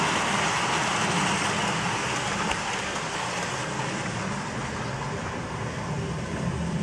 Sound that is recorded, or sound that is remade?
recorded